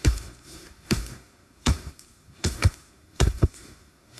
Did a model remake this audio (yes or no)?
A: yes